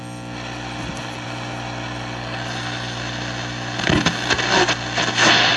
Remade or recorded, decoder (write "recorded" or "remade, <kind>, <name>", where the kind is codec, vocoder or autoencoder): recorded